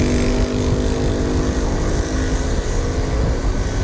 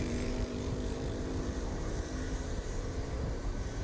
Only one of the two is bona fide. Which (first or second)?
first